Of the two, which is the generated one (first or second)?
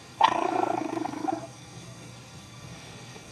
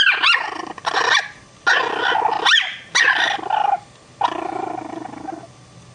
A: first